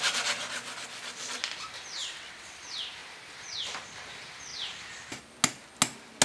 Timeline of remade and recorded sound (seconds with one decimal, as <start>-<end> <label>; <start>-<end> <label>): 0.0-2.0 recorded; 2.0-2.6 remade; 2.6-6.2 recorded